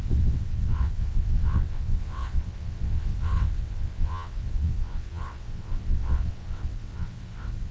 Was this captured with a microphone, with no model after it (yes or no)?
no